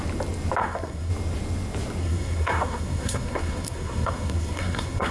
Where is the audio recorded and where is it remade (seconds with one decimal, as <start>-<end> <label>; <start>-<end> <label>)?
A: 0.0-0.6 recorded; 0.6-1.1 remade; 1.1-2.0 recorded; 2.0-5.1 remade